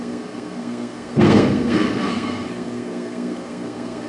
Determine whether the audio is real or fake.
fake